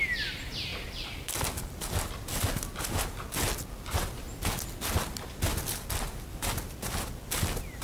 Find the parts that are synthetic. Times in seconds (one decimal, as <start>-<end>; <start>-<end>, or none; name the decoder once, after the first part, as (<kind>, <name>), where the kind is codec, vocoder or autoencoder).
none